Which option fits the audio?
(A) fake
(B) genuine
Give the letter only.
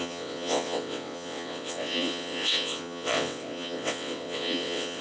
A